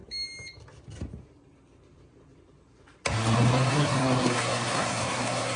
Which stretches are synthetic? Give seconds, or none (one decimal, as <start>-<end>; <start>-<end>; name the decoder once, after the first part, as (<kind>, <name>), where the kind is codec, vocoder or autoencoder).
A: 3.5-5.6 (codec, SNAC)